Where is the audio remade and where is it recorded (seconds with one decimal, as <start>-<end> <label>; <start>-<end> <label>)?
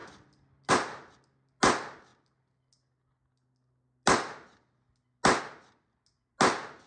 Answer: 0.0-6.9 recorded